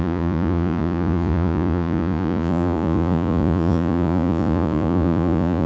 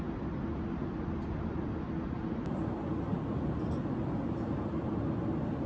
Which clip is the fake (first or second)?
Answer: first